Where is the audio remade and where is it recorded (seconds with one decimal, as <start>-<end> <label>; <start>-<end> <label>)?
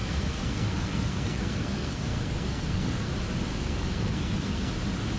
0.0-3.1 remade; 3.1-3.5 recorded; 3.5-4.7 remade; 4.7-5.2 recorded